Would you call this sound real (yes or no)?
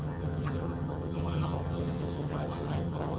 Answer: no